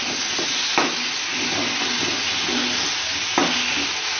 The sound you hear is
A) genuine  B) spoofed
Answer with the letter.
A